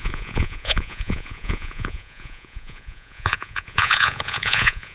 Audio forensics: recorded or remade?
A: remade